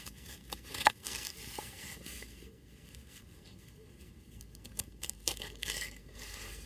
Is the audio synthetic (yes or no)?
yes